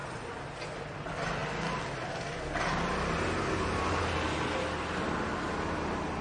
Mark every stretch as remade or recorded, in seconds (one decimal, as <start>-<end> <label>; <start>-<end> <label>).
0.0-6.2 recorded